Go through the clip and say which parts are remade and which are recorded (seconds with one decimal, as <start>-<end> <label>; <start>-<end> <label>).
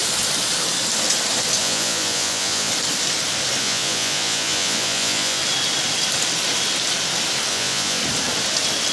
0.0-1.6 recorded; 1.6-2.7 remade; 2.7-3.6 recorded; 3.6-5.4 remade; 5.4-7.5 recorded; 7.5-8.0 remade; 8.0-8.9 recorded